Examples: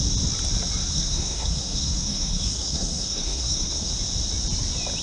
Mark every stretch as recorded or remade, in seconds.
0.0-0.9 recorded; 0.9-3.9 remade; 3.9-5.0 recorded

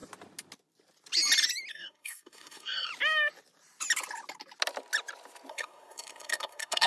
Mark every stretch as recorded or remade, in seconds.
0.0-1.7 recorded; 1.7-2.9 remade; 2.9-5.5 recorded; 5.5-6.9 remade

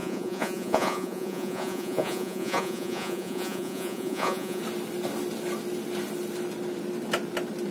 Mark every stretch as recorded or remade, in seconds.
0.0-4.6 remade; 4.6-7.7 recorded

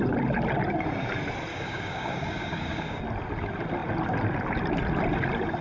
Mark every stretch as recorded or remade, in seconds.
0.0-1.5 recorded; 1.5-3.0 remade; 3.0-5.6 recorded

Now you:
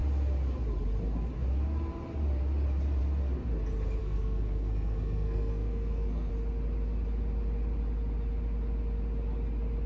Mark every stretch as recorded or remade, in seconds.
0.0-4.0 recorded; 4.0-6.3 remade; 6.3-9.9 recorded

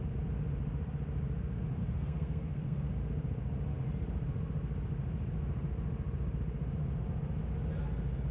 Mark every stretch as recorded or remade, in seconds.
0.0-1.8 recorded; 1.8-2.9 remade; 2.9-8.3 recorded